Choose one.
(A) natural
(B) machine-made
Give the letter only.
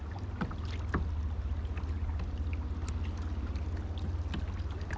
A